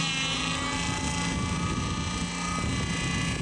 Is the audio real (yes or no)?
yes